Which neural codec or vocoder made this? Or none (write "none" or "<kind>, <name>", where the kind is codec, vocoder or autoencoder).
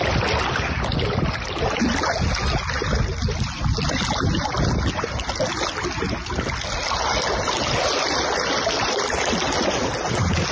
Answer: none